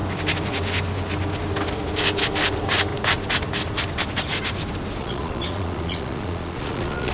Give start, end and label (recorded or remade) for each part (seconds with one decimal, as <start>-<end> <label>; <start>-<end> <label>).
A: 0.0-5.0 recorded; 5.0-7.1 remade